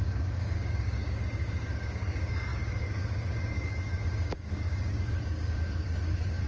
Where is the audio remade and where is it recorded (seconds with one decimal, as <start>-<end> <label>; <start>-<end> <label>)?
0.0-6.5 remade